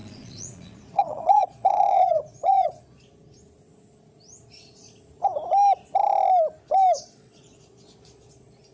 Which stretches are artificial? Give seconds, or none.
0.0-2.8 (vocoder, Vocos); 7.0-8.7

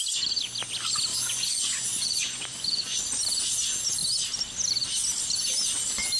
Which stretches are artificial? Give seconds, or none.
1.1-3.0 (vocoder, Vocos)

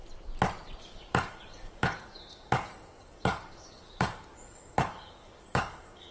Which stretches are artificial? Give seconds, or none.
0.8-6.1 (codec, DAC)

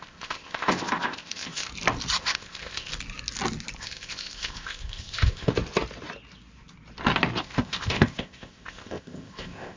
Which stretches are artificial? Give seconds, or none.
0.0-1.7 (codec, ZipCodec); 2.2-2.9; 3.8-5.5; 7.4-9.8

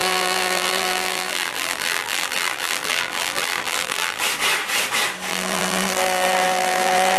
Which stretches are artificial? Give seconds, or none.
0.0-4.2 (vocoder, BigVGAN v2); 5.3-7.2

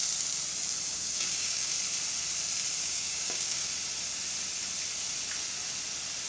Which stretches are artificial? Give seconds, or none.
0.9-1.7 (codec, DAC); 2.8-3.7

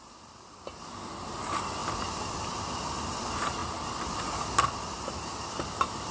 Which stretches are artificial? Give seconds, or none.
none